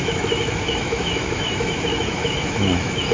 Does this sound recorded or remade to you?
remade